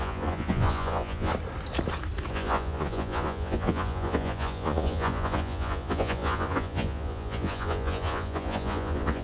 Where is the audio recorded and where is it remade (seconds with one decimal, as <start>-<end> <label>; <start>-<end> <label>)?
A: 0.0-1.3 remade; 1.3-2.3 recorded; 2.3-9.2 remade